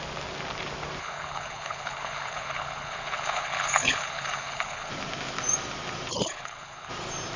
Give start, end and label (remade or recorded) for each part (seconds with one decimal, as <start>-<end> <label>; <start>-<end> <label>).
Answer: 0.0-1.0 recorded; 1.0-4.9 remade; 4.9-6.1 recorded; 6.1-6.9 remade; 6.9-7.4 recorded